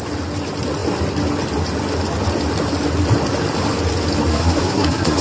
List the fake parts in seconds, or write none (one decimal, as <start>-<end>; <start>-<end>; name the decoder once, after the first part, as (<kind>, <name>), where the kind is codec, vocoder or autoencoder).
4.3-5.2 (codec, SNAC)